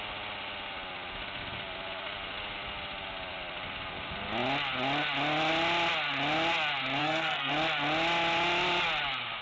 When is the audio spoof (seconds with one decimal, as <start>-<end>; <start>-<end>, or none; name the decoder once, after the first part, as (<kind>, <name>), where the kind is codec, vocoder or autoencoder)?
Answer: 7.0-7.5 (codec, SNAC)